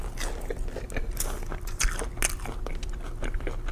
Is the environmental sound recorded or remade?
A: recorded